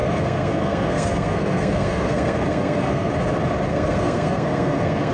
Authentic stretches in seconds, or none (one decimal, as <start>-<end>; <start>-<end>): 3.1-3.7